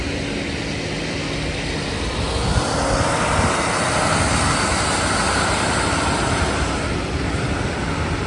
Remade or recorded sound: recorded